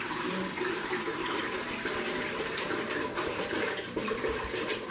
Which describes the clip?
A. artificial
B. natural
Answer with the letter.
A